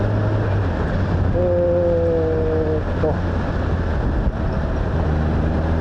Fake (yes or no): no